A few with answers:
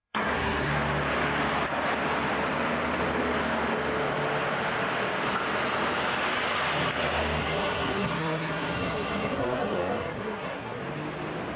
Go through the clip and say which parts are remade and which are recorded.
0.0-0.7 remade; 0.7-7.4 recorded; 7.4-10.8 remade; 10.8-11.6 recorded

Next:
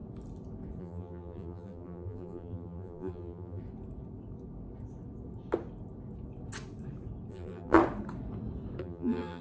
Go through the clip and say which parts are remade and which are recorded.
0.0-0.8 recorded; 0.8-3.6 remade; 3.6-7.3 recorded; 7.3-7.8 remade; 7.8-8.8 recorded; 8.8-9.4 remade

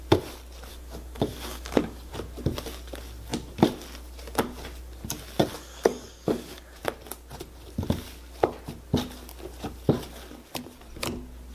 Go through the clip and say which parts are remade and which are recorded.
0.0-0.7 recorded; 0.7-2.1 remade; 2.1-5.5 recorded; 5.5-6.8 remade; 6.8-11.5 recorded

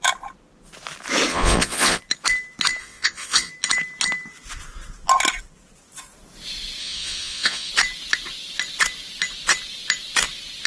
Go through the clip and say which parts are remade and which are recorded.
0.0-1.3 recorded; 1.3-2.0 remade; 2.0-2.8 recorded; 2.8-3.5 remade; 3.5-6.8 recorded; 6.8-7.7 remade; 7.7-10.7 recorded

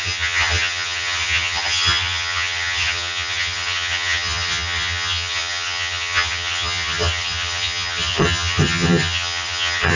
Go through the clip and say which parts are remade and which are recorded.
0.0-10.0 remade

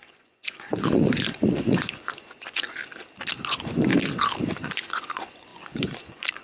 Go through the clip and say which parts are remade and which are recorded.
0.0-2.8 remade; 2.8-3.4 recorded; 3.4-3.9 remade; 3.9-4.6 recorded; 4.6-6.4 remade

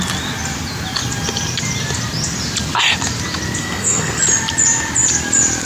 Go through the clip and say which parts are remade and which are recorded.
0.0-3.6 recorded; 3.6-4.2 remade; 4.2-5.7 recorded

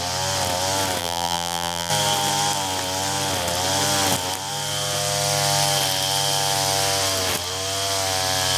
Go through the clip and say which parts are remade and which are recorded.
0.0-1.0 recorded; 1.0-1.9 remade; 1.9-8.6 recorded